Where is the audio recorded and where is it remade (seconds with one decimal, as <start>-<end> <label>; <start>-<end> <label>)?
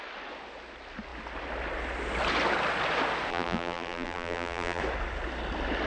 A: 0.0-3.3 recorded; 3.3-4.8 remade; 4.8-5.9 recorded